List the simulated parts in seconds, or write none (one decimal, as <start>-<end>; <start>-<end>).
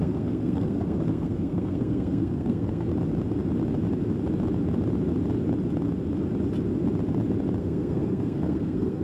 0.0-2.9; 7.6-9.0